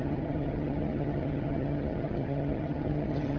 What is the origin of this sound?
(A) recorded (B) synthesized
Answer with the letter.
B